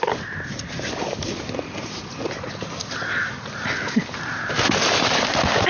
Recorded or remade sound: recorded